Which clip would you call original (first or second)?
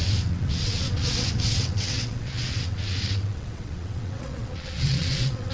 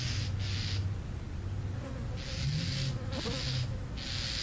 second